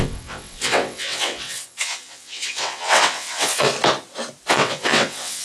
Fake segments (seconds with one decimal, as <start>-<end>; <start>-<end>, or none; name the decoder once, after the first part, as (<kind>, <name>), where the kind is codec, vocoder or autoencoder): 0.0-3.7 (vocoder, WaveNeXt); 4.5-5.4